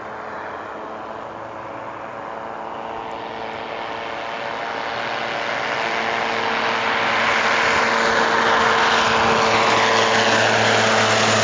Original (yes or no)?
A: yes